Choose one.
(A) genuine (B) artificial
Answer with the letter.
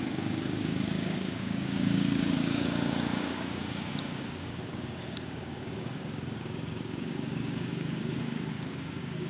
B